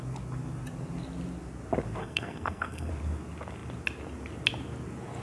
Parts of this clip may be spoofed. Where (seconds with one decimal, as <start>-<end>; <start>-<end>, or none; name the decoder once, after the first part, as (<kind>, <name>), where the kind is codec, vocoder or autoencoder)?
2.0-2.9 (codec, SNAC)